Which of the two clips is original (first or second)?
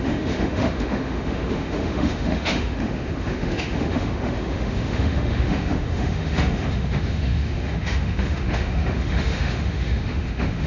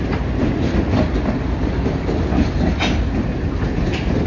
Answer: second